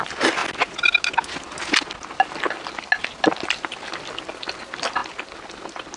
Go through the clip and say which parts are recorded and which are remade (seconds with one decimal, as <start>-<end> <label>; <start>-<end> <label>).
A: 0.0-6.0 recorded